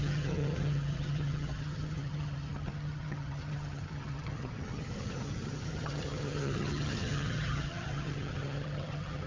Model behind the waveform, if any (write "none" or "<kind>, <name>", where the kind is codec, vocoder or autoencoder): vocoder, HiFi-GAN